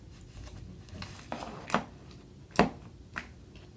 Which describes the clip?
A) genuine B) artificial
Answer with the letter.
A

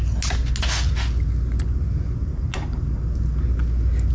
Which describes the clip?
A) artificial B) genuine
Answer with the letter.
B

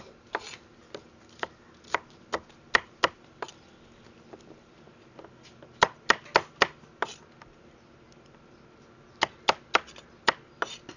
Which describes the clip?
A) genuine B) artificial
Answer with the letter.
A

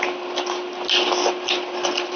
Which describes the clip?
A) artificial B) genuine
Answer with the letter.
B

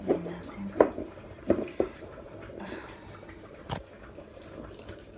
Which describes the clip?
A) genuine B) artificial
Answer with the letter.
B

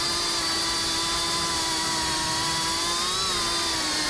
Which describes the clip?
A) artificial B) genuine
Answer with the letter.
B